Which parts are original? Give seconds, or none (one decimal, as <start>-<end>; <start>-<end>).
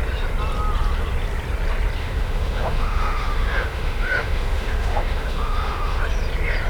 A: 0.0-2.0; 6.0-6.7